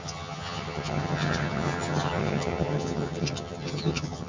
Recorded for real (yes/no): no